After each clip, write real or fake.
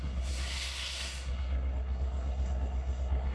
fake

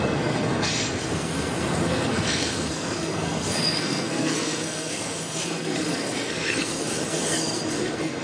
fake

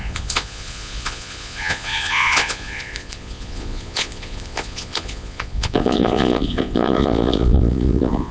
fake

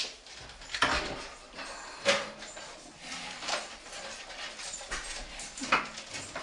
real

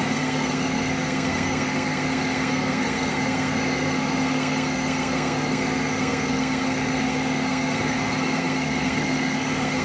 fake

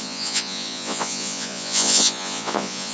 fake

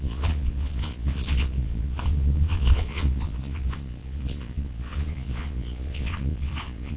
fake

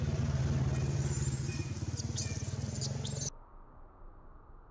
real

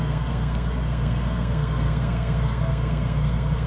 fake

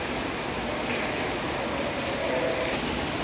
real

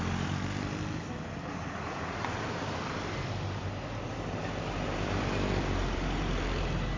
fake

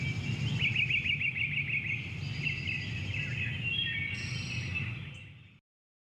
real